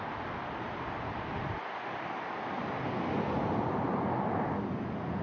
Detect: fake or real real